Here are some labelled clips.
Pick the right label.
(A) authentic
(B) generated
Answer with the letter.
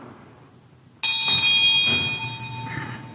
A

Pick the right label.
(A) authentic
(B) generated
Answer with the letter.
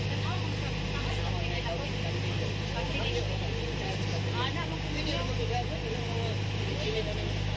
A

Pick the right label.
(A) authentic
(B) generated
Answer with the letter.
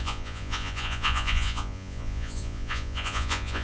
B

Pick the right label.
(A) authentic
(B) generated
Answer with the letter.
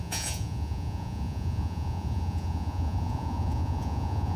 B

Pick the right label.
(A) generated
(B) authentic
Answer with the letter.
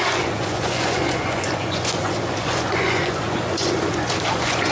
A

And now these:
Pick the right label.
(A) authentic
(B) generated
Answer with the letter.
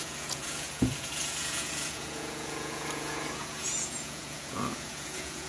B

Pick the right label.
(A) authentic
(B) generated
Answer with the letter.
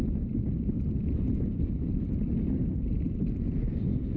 A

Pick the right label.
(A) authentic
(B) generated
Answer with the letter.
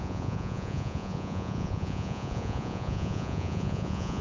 B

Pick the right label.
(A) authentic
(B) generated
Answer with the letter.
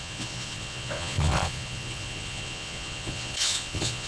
B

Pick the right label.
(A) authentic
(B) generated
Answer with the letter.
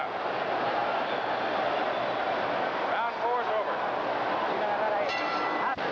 A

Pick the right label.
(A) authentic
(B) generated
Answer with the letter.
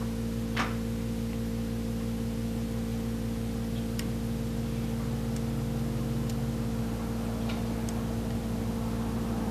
A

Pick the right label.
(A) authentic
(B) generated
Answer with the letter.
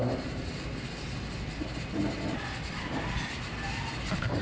A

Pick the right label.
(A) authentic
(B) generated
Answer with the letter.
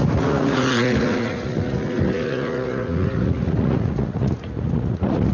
B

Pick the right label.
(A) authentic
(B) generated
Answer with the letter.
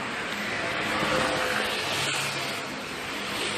A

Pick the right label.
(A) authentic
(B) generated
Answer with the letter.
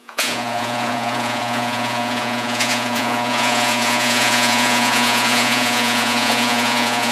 B